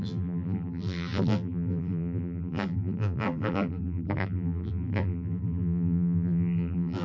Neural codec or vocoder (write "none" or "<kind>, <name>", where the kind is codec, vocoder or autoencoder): vocoder, BigVGAN v2